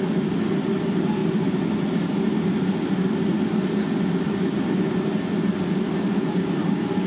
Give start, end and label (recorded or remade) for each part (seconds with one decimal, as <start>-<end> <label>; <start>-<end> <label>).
0.0-7.1 recorded